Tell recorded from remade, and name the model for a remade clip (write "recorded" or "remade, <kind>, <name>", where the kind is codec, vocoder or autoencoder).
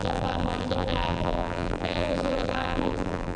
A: remade, vocoder, BigVGAN v2